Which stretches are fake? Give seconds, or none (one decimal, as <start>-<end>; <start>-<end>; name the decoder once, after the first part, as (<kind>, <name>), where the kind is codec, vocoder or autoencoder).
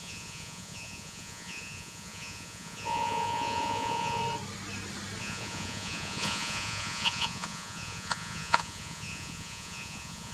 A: 0.0-4.2 (vocoder, Vocos); 5.2-10.3